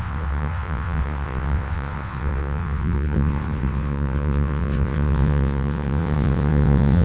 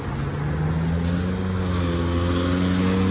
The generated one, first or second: first